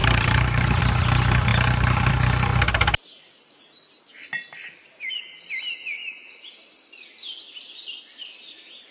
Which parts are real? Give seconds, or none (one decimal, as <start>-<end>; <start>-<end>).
0.8-6.0; 6.5-8.9

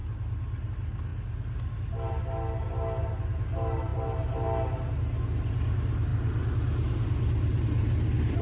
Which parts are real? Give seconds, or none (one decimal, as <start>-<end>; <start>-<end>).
0.0-8.4